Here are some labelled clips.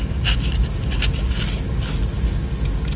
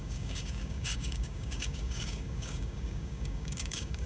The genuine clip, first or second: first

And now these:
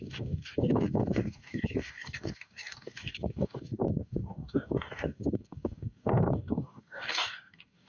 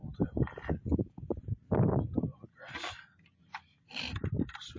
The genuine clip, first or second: second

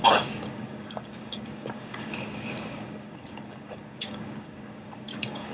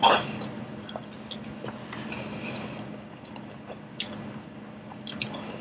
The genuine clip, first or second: second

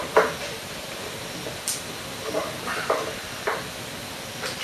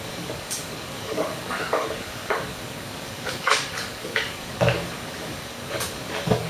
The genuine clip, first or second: first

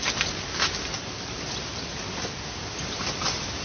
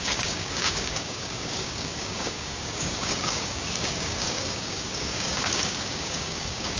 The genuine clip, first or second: first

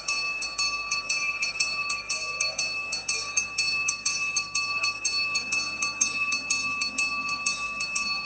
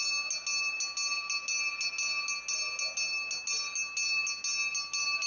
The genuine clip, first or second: second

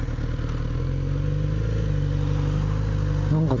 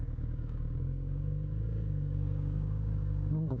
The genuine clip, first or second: first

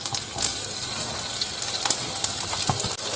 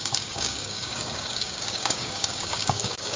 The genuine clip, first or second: first